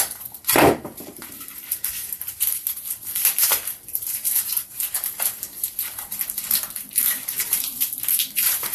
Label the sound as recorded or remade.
remade